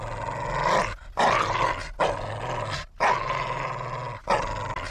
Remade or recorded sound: recorded